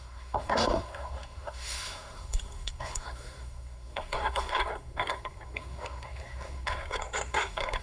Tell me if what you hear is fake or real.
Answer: fake